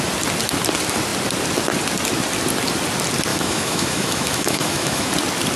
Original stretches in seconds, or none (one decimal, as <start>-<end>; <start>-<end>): 0.0-3.3; 5.1-5.6